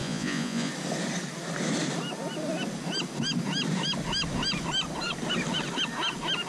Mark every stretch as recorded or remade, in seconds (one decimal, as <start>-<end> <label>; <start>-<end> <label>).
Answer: 0.0-0.7 remade; 0.7-6.5 recorded